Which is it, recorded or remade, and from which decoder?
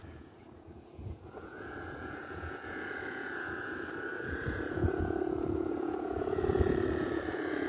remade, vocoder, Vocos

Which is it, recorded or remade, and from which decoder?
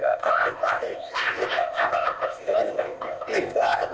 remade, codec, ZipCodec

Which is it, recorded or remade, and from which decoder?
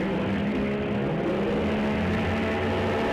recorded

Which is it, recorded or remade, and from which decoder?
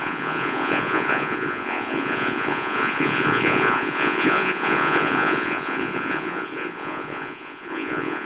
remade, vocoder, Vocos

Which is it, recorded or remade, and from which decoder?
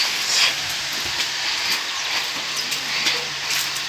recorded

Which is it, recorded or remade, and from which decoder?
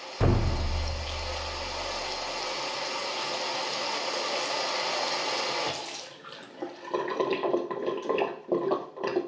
recorded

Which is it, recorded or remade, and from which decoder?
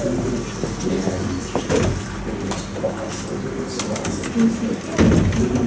recorded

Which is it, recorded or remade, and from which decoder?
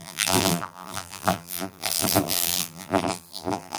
remade, vocoder, BigVGAN v2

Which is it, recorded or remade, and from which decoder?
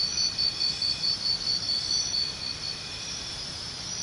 recorded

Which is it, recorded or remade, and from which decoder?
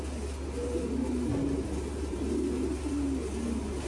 recorded